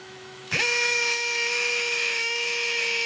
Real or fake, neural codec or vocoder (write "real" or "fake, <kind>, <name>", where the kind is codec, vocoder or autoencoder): fake, autoencoder, DAC-VAE